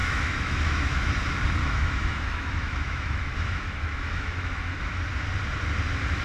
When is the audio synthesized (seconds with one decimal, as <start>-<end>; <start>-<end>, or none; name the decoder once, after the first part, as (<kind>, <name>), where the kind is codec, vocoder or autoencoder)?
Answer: 0.0-1.1 (autoencoder, DAC-VAE); 1.6-5.0